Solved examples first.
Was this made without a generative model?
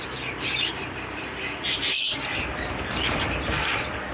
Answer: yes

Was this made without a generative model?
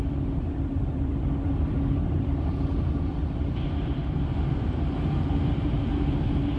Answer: no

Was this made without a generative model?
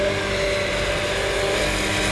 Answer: yes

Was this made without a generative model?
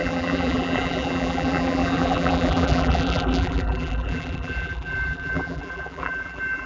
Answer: no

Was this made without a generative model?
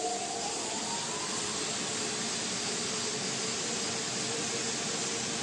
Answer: yes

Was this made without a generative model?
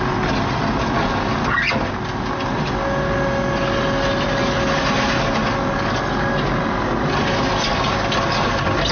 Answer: yes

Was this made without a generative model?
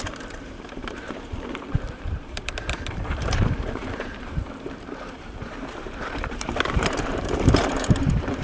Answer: no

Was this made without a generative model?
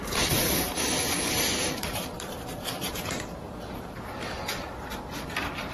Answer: no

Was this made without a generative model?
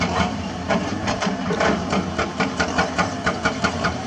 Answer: no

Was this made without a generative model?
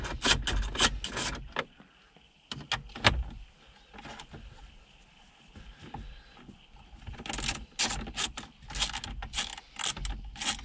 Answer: yes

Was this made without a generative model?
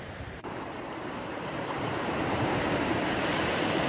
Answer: no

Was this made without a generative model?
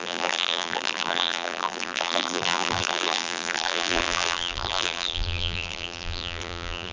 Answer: no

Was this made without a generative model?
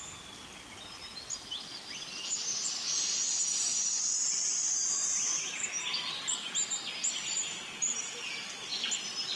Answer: yes